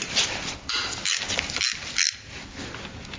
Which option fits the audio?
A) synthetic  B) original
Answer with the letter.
B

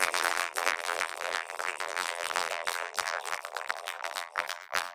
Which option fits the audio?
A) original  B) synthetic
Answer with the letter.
B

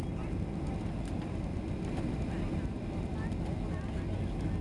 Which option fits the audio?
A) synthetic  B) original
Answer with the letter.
B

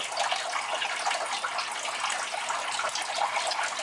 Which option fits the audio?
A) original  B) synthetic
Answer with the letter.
A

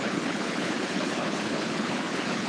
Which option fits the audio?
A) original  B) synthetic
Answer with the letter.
B